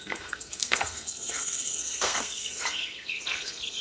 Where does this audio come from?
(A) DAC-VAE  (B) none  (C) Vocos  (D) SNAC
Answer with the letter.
D